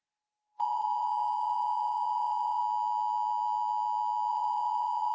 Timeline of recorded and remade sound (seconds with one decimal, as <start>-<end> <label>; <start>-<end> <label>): 0.0-2.6 remade; 2.6-4.3 recorded; 4.3-5.1 remade